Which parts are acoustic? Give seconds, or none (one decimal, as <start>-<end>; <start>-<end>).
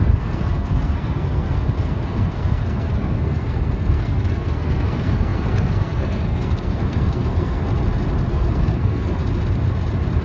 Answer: 7.6-8.3; 9.2-10.2